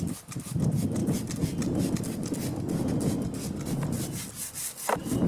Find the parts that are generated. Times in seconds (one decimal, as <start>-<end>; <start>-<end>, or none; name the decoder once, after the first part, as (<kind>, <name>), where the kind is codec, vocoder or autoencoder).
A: none